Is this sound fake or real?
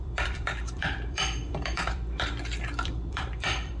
fake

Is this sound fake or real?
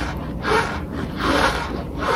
fake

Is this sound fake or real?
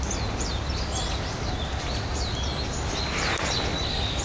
real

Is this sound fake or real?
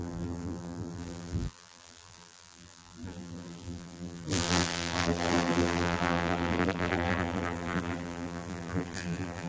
fake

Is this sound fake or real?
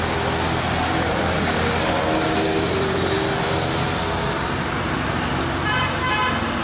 real